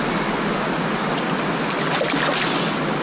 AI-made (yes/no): no